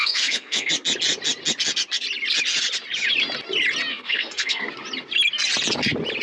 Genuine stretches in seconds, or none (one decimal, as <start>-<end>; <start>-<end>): 0.7-3.9; 4.7-6.2